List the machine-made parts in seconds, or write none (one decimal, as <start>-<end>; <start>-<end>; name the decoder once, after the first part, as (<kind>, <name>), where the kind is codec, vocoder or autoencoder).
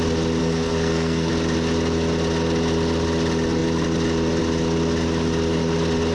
0.4-1.3 (codec, SNAC)